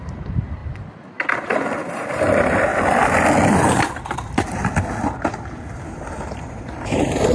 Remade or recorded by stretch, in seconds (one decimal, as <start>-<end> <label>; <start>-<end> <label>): 0.0-0.6 remade; 0.6-1.9 recorded; 1.9-2.7 remade; 2.7-3.5 recorded; 3.5-4.6 remade; 4.6-5.3 recorded; 5.3-7.3 remade